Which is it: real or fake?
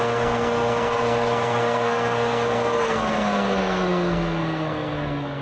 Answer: fake